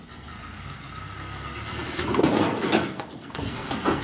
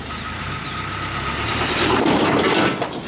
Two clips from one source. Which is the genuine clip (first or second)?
second